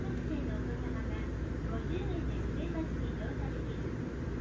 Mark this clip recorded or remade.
recorded